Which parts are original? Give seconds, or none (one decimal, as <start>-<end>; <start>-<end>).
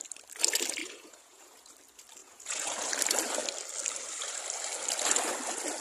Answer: 0.0-0.8; 1.7-2.2; 2.9-5.8